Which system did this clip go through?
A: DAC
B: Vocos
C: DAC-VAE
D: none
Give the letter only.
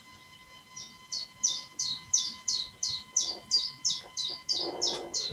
D